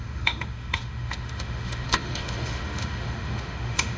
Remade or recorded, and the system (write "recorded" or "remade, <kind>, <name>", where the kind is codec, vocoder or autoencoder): remade, autoencoder, DAC-VAE